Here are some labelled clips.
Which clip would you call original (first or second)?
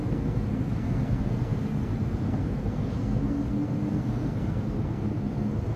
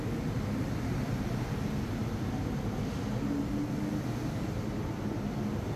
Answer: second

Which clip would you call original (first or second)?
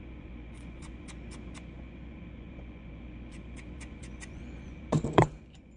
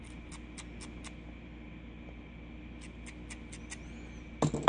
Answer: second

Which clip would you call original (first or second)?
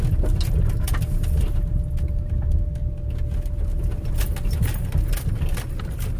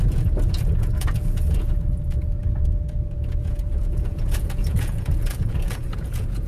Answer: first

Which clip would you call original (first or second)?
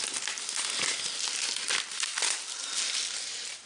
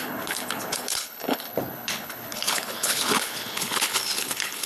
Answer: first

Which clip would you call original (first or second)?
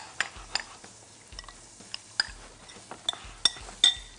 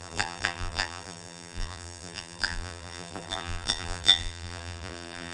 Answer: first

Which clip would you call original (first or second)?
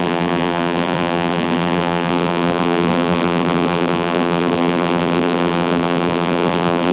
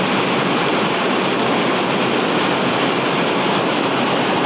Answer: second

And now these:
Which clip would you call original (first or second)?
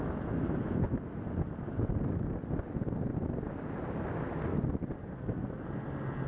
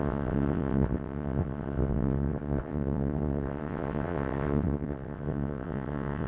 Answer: first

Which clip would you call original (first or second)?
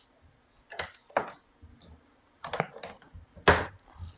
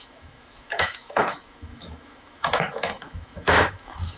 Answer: first